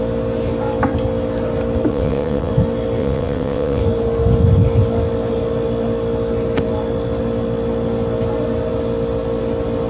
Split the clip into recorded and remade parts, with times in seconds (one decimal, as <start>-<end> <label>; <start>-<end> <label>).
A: 0.0-1.9 recorded; 1.9-2.5 remade; 2.5-3.0 recorded; 3.0-3.8 remade; 3.8-9.9 recorded